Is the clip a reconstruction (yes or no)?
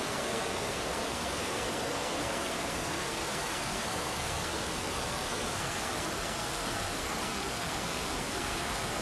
yes